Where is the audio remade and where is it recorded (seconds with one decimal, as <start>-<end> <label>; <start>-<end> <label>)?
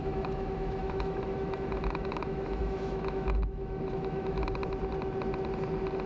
0.0-4.6 remade; 4.6-6.1 recorded